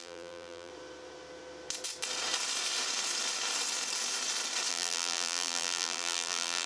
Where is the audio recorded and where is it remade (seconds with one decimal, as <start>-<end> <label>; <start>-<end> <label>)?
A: 0.0-0.7 remade; 0.7-4.7 recorded; 4.7-6.7 remade